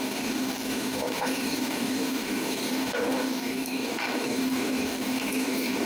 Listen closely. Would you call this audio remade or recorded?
remade